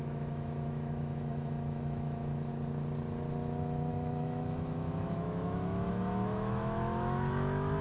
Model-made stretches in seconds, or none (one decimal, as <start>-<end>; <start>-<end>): 0.0-2.5; 3.9-7.8